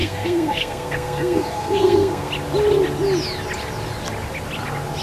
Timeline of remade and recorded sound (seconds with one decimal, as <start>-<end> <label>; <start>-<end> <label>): 0.0-2.3 remade; 2.3-5.0 recorded